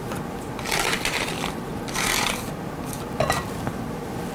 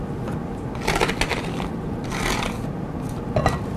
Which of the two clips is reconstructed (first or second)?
first